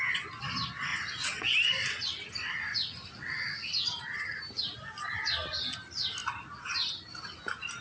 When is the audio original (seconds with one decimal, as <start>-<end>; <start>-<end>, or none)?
0.0-7.8

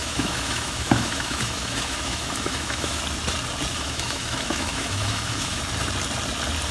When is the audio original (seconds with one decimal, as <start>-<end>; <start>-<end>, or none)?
3.0-3.7; 5.6-6.7

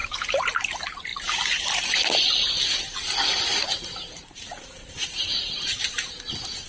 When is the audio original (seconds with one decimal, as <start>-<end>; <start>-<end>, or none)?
0.0-6.7

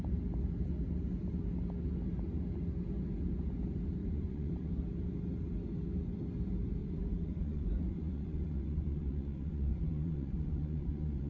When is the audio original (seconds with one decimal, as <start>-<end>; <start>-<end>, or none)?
0.0-4.0; 4.7-6.8

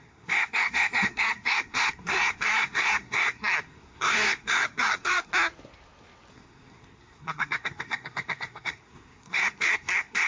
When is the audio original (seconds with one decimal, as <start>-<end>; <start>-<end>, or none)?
5.3-6.3

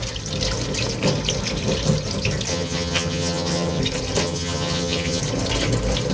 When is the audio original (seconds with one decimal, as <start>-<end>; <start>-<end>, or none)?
0.0-2.5; 3.8-4.2; 5.2-6.1

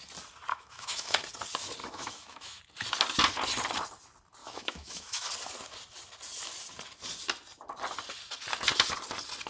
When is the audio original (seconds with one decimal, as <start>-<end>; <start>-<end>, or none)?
0.0-0.5; 1.2-1.8; 2.6-4.4; 5.3-9.5

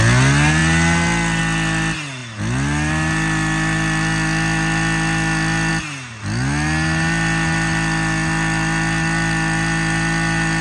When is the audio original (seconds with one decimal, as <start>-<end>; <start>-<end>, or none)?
0.0-10.6